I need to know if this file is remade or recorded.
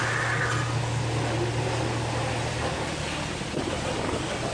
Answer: recorded